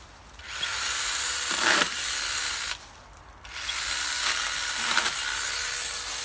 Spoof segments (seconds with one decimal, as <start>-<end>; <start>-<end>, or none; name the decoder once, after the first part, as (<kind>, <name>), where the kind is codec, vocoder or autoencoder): 0.7-2.1 (vocoder, BigVGAN v2)